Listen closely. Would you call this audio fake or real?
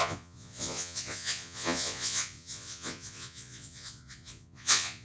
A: fake